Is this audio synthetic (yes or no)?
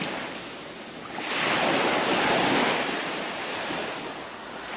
no